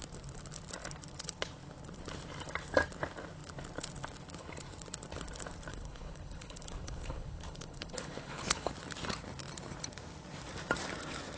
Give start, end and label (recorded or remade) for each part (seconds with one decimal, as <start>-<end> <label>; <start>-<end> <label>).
0.0-5.7 recorded; 5.7-8.7 remade; 8.7-11.4 recorded